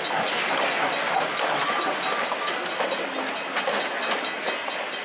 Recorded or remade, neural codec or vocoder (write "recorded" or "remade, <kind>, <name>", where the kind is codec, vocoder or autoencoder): recorded